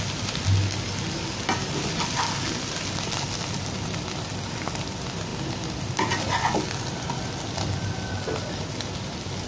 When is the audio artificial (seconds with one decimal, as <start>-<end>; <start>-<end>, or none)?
none